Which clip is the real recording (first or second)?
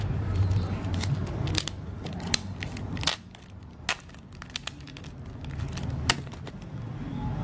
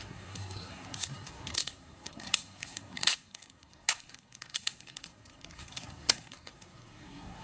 first